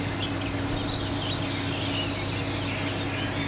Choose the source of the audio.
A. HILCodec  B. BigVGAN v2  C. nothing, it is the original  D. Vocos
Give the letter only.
C